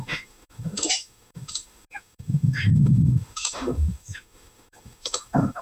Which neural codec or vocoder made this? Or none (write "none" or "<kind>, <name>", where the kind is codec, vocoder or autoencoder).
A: autoencoder, DAC-VAE